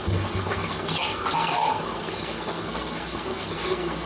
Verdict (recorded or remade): remade